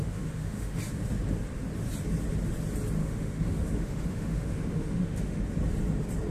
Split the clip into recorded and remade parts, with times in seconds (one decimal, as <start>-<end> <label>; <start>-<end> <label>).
0.0-0.8 remade; 0.8-3.0 recorded; 3.0-5.4 remade; 5.4-6.3 recorded